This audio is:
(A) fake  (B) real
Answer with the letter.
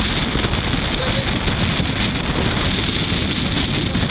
B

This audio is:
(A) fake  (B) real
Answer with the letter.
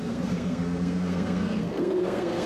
A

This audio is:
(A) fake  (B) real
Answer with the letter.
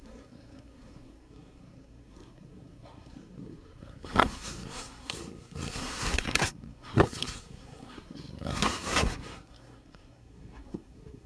A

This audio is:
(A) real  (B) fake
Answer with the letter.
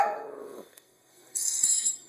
B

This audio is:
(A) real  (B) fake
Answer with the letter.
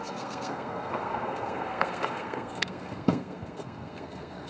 B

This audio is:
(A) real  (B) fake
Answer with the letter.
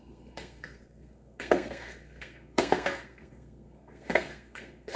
B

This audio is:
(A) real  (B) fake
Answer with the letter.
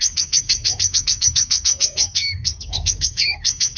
B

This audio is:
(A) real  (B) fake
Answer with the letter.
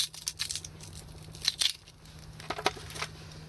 A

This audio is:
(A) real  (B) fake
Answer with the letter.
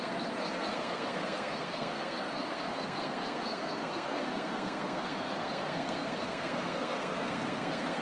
B